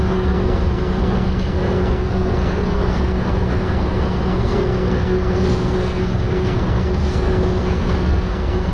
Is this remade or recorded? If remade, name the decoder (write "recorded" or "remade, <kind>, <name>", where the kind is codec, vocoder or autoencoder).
remade, codec, SNAC